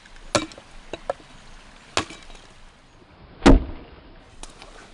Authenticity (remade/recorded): recorded